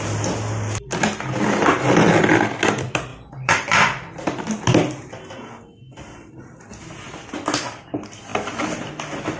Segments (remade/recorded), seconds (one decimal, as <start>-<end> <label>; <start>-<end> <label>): 0.0-9.4 recorded